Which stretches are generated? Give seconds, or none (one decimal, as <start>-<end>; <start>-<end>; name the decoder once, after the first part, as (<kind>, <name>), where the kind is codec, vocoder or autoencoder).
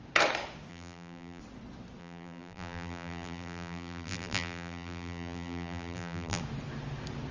0.7-1.4 (vocoder, BigVGAN v2); 2.0-6.4